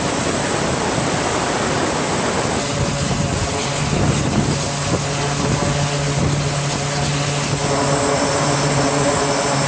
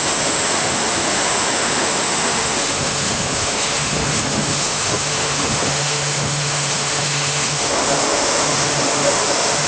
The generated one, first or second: second